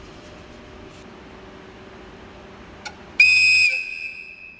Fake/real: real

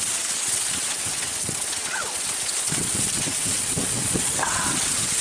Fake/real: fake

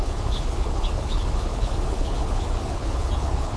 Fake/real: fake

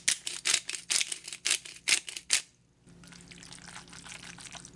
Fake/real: real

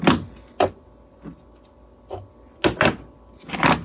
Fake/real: real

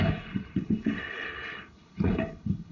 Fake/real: fake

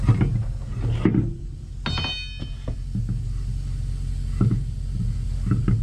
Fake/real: real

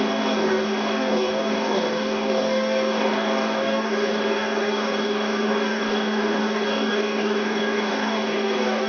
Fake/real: fake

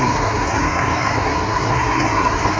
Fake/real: fake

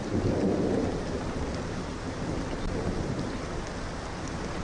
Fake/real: real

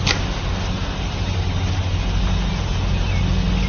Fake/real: real